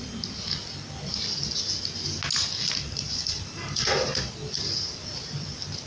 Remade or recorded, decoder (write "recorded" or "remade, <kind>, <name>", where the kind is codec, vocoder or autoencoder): recorded